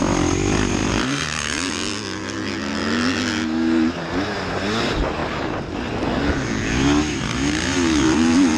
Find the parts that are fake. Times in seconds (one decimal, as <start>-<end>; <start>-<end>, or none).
0.8-1.7